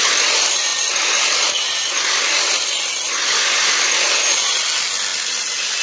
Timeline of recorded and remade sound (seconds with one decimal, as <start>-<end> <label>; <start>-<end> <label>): 0.0-5.8 recorded